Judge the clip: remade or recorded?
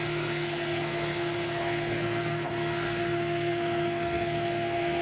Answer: remade